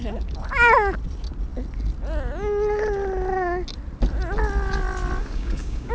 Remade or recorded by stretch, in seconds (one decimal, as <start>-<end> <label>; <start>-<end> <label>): 0.0-5.2 recorded; 5.2-5.9 remade